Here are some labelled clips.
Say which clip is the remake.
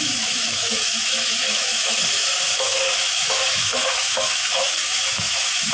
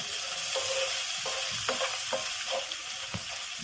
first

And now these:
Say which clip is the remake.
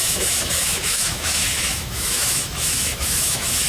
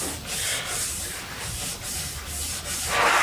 first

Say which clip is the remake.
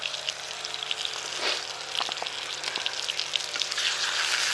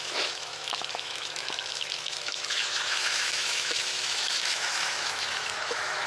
second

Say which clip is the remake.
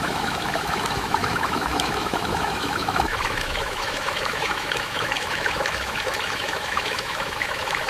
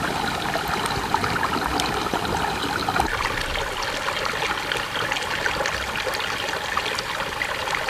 first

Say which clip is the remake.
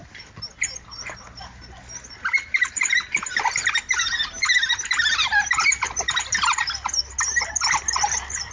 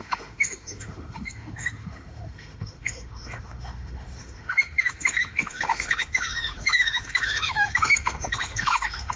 second